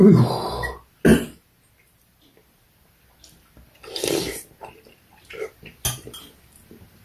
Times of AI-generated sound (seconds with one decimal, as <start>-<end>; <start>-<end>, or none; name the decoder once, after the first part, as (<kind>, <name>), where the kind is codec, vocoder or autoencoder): 1.1-5.3 (vocoder, BigVGAN v2)